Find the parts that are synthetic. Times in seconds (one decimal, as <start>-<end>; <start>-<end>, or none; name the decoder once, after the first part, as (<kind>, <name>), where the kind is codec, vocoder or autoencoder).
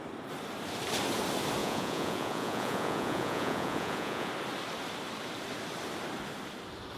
1.6-4.3 (vocoder, Vocos)